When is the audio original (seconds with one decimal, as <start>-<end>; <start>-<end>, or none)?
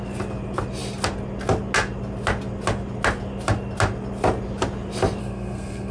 0.0-5.2